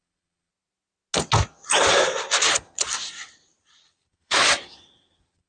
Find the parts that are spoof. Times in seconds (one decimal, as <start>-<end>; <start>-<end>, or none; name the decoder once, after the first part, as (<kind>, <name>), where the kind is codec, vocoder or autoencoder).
0.0-0.5 (vocoder, Vocos); 2.5-2.9; 3.6-5.5